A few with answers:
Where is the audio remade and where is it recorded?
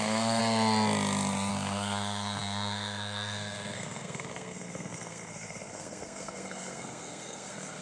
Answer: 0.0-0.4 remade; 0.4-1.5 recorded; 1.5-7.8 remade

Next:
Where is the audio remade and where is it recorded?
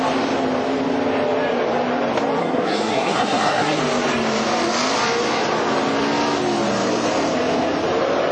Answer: 0.0-2.4 recorded; 2.4-3.8 remade; 3.8-8.3 recorded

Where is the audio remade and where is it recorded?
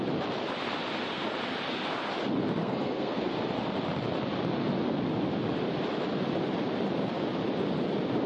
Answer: 0.0-2.6 recorded; 2.6-3.2 remade; 3.2-8.3 recorded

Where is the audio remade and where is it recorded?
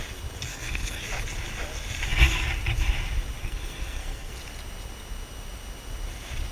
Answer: 0.0-0.5 recorded; 0.5-1.0 remade; 1.0-3.4 recorded; 3.4-4.4 remade; 4.4-6.5 recorded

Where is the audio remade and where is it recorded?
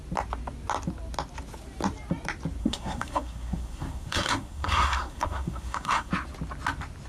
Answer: 0.0-2.6 recorded; 2.6-6.1 remade; 6.1-7.1 recorded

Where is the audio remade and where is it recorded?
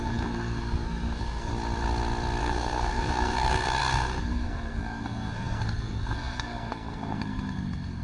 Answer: 0.0-1.5 remade; 1.5-2.4 recorded; 2.4-8.0 remade